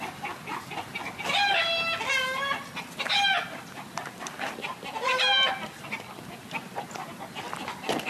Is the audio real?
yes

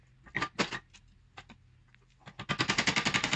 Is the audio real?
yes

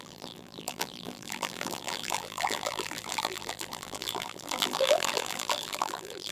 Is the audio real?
no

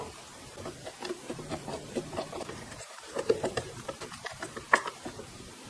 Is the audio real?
no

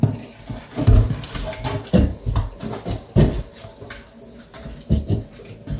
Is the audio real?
yes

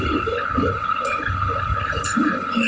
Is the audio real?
no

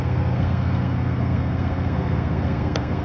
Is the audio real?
no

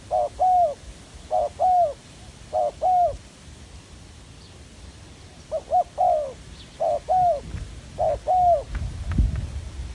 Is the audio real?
yes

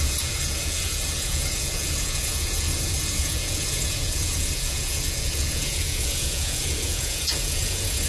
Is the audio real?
no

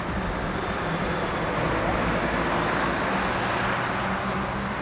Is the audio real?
yes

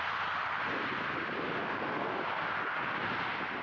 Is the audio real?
yes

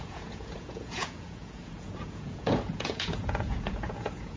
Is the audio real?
no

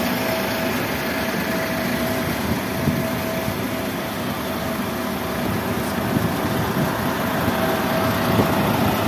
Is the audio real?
yes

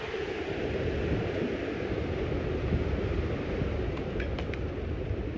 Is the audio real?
yes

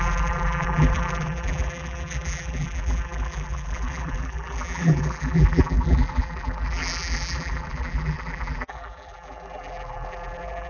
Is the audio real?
no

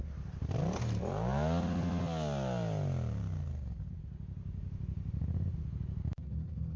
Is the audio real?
yes